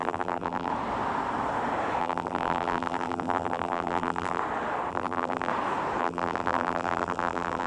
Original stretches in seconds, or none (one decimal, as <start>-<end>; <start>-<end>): 0.7-2.0; 4.4-4.9; 5.5-6.0